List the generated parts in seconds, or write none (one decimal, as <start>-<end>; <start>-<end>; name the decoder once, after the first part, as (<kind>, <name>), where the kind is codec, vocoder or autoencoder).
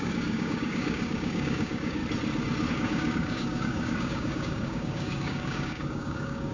0.0-2.0 (codec, DAC); 2.7-6.5